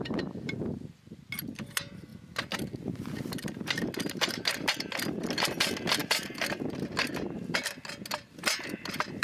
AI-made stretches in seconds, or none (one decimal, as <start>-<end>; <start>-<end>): none